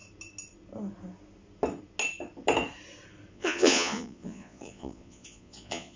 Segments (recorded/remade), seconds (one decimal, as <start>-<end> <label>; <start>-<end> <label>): 0.0-3.3 recorded; 3.3-6.0 remade